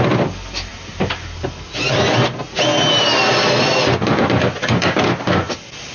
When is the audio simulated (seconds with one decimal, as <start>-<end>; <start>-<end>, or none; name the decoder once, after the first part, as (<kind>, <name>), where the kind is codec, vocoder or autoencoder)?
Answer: 0.7-3.0 (vocoder, BigVGAN v2); 4.6-5.5